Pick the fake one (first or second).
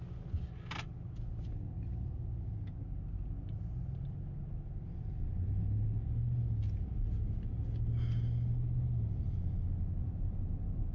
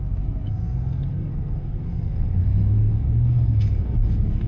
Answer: second